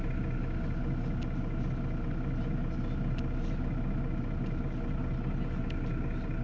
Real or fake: real